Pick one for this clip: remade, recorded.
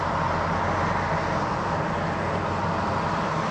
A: recorded